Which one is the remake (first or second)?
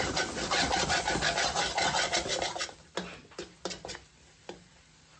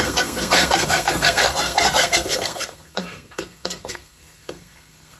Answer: second